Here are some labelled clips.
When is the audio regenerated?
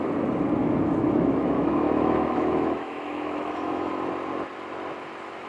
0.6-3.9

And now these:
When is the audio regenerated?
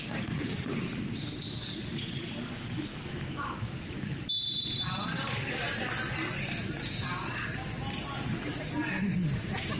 2.9-4.2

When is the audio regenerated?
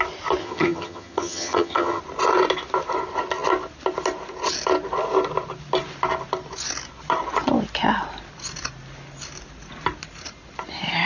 0.4-2.0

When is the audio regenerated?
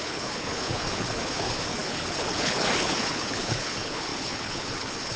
0.0-5.2